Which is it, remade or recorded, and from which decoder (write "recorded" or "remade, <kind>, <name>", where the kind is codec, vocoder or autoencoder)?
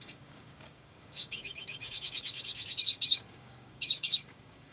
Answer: remade, codec, DAC